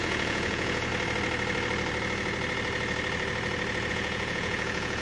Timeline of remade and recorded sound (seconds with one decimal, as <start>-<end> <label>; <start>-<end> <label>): 0.0-0.9 remade; 0.9-3.9 recorded; 3.9-5.0 remade